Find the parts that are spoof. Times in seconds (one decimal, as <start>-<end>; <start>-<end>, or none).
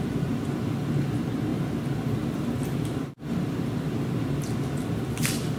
0.0-5.6